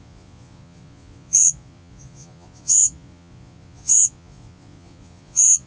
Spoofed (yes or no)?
yes